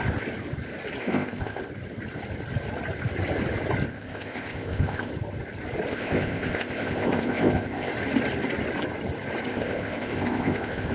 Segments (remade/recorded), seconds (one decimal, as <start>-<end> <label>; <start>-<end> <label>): 0.0-1.0 recorded; 1.0-1.6 remade; 1.6-3.9 recorded; 3.9-5.1 remade; 5.1-5.9 recorded; 5.9-7.9 remade; 7.9-9.5 recorded; 9.5-10.9 remade